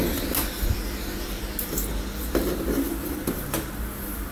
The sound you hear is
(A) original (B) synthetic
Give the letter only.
A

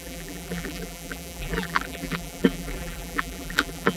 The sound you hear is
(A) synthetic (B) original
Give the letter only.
A